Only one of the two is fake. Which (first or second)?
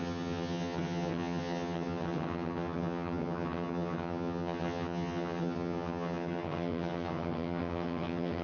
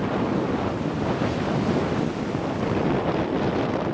first